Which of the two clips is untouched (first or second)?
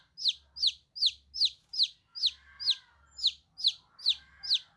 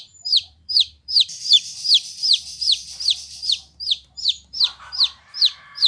first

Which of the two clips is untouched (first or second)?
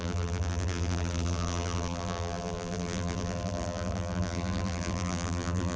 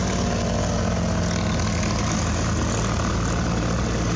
second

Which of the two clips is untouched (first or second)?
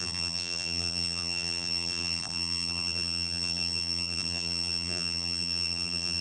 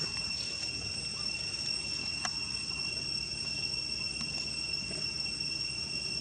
second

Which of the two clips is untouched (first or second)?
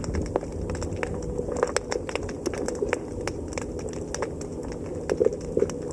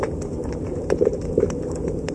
first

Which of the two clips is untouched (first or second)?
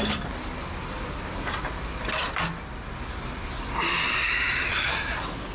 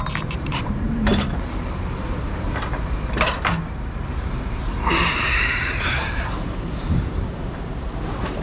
first